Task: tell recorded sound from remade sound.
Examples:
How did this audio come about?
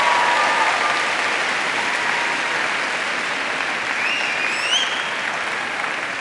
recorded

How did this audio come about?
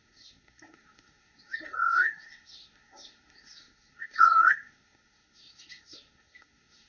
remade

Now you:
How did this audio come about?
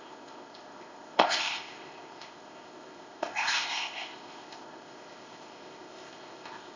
remade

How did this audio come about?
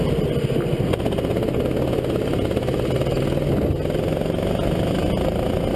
recorded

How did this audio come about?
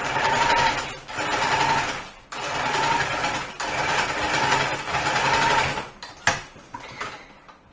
recorded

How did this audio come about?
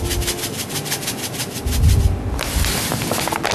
recorded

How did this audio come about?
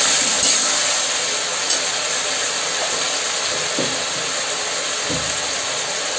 recorded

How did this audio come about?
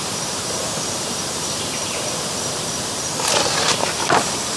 remade